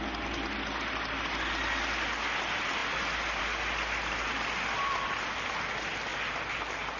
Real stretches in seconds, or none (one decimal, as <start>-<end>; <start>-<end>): 0.0-7.0